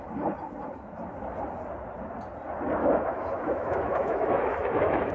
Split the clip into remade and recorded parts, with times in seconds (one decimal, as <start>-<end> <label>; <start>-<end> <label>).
0.0-2.8 recorded; 2.8-5.1 remade